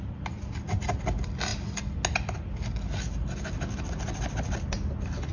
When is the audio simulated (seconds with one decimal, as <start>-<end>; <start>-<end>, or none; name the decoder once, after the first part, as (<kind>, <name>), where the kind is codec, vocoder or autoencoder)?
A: none